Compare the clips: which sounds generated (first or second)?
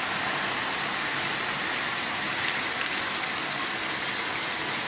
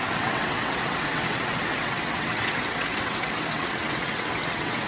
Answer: second